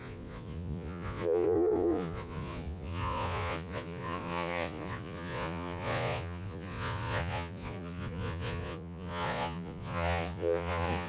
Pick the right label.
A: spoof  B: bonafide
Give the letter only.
A